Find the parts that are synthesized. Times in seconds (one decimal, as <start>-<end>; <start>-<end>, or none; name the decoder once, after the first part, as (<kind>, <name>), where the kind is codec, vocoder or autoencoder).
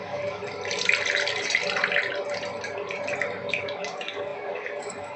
0.0-0.4 (codec, DAC); 3.5-5.2